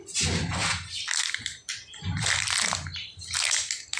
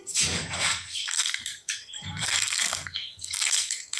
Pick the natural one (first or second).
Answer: first